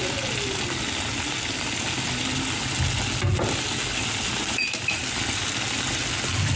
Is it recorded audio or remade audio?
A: recorded